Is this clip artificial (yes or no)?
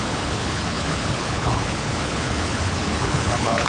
yes